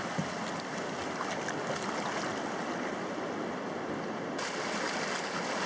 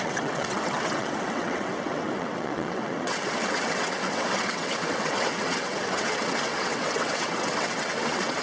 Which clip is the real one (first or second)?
first